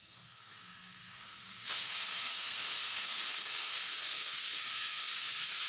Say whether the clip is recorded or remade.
remade